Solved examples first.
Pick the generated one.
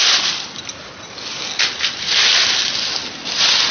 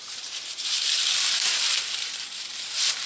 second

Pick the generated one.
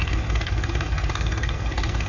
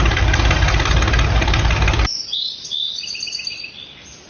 first